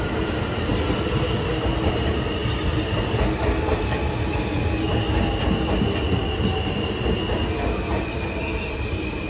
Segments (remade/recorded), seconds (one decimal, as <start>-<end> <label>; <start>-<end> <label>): 0.0-9.3 recorded